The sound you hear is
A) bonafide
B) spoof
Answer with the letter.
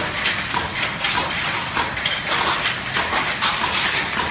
A